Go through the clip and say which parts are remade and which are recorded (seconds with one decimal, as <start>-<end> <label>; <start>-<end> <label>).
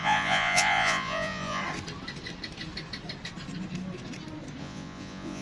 0.0-1.6 remade; 1.6-4.6 recorded; 4.6-5.4 remade